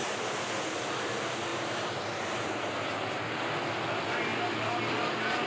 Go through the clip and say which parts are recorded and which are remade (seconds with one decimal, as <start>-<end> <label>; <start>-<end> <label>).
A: 0.0-0.7 remade; 0.7-1.5 recorded; 1.5-3.2 remade; 3.2-5.5 recorded